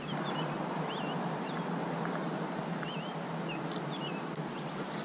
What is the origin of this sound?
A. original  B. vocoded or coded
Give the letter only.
A